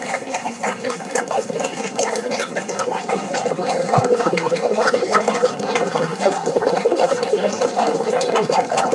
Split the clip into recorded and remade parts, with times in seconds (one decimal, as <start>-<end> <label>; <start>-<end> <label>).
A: 0.0-8.9 remade